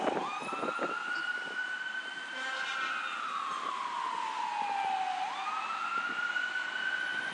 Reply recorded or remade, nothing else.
recorded